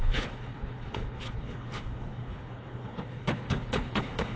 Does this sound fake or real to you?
fake